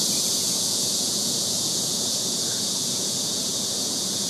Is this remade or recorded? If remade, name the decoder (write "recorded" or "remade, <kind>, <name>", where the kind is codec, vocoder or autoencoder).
remade, vocoder, Vocos